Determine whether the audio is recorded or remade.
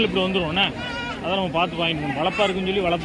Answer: recorded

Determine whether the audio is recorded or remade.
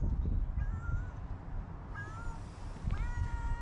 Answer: recorded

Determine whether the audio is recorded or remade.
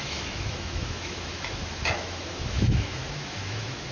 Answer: remade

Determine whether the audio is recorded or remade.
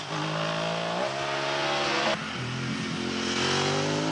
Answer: recorded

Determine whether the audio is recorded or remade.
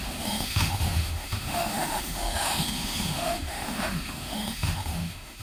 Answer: remade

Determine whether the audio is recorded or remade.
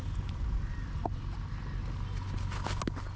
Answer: recorded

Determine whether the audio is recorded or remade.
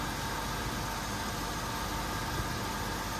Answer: recorded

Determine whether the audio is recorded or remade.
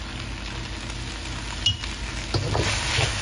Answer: recorded